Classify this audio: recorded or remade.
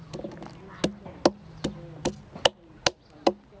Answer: recorded